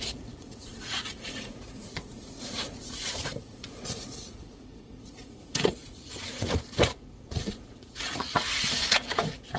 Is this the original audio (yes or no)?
no